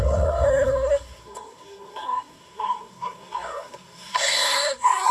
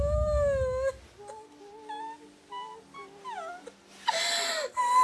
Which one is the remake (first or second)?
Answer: first